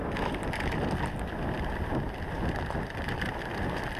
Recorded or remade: recorded